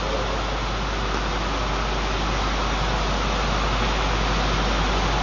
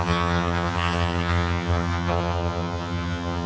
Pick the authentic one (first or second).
first